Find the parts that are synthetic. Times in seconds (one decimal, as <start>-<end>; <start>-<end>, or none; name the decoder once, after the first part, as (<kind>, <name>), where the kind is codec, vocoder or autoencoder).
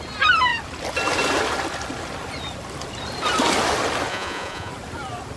4.1-4.7 (vocoder, Vocos)